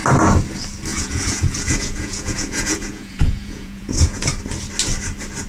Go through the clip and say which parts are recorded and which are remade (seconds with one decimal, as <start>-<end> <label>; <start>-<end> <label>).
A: 0.0-0.9 recorded; 0.9-4.2 remade; 4.2-5.5 recorded